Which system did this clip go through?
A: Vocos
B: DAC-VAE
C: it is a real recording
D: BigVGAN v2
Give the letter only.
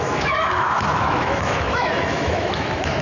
B